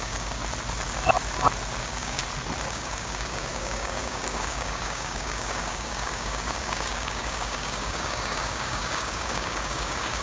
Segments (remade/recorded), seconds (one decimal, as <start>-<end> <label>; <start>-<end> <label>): 0.0-0.4 remade; 0.4-1.8 recorded; 1.8-2.2 remade; 2.2-2.7 recorded; 2.7-10.2 remade